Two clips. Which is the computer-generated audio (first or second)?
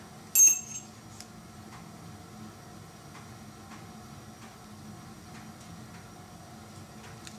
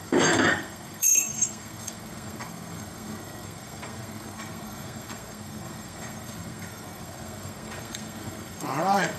second